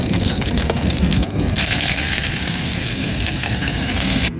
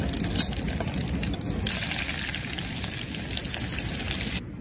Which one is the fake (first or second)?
first